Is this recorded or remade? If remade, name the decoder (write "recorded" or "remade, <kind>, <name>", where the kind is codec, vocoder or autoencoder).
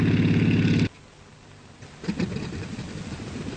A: recorded